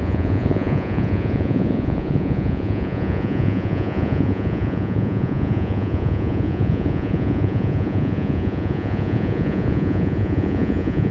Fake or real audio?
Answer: fake